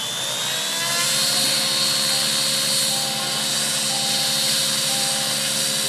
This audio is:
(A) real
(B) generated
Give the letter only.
A